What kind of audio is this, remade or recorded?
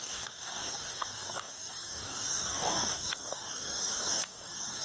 remade